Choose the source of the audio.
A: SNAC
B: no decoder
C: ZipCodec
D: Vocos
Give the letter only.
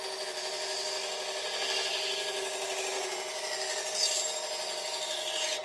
B